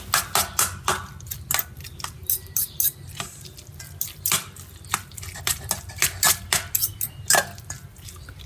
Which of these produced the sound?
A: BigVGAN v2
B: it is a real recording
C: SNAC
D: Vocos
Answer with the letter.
B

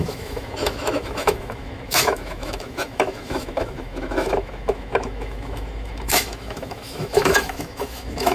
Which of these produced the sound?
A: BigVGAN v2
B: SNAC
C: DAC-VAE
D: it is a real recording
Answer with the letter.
C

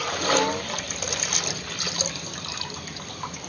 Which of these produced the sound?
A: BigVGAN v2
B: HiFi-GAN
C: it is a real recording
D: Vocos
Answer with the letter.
A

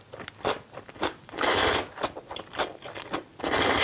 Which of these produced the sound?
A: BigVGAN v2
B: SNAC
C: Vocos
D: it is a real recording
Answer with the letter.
D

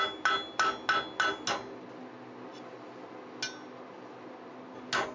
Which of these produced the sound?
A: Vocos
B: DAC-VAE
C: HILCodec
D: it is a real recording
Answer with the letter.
D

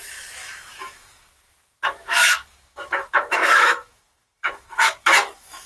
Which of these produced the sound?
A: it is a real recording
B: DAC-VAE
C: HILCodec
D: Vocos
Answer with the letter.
B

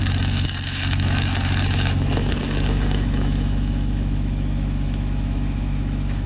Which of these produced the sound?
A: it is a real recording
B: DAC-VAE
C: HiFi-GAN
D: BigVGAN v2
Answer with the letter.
B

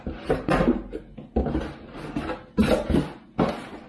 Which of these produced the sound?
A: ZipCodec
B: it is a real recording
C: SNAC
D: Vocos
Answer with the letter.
B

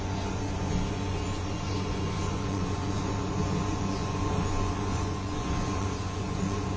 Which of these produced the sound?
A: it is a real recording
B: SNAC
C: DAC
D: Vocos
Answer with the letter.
D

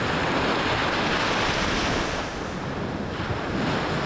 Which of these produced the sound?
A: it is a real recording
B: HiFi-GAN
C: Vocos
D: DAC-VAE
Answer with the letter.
A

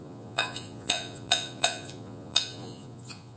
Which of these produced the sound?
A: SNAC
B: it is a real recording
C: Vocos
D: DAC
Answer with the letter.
C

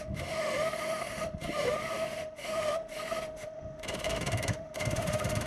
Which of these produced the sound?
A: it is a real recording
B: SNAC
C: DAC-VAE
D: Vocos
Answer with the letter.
C